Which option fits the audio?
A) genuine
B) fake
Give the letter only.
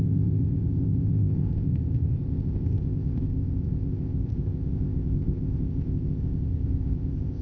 B